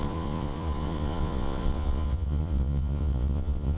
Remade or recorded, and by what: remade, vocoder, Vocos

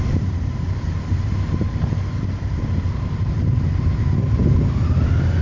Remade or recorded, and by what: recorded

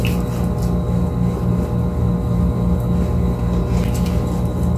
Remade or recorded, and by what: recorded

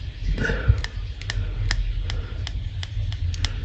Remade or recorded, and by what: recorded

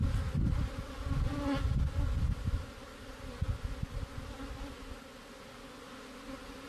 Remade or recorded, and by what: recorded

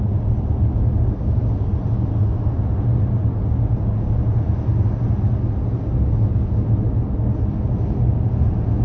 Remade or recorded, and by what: recorded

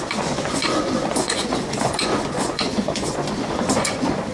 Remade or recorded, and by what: remade, vocoder, Vocos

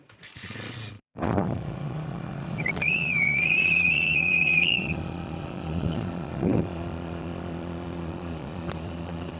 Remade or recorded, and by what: remade, vocoder, Vocos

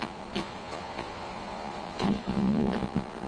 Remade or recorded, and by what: remade, vocoder, Vocos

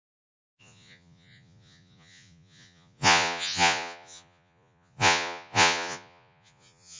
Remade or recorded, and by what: remade, vocoder, Vocos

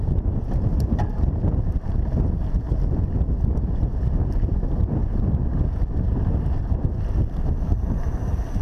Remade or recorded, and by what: recorded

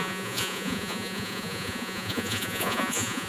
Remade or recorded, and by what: remade, vocoder, Vocos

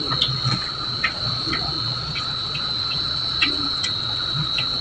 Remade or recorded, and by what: remade, vocoder, Vocos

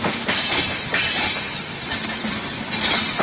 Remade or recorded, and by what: recorded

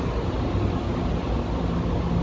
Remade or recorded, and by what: recorded